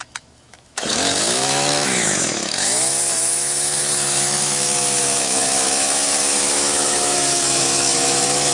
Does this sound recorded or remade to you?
remade